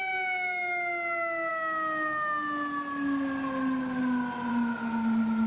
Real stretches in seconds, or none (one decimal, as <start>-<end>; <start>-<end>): 0.0-5.5